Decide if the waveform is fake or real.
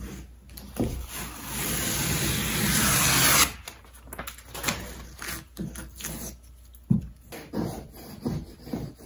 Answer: real